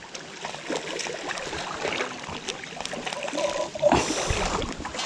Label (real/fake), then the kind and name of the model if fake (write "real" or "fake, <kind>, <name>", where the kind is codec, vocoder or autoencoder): real